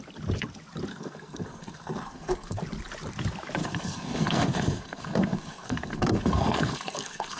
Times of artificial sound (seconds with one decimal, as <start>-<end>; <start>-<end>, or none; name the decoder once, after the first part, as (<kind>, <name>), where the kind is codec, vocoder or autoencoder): 0.9-2.6 (codec, SNAC); 3.6-7.4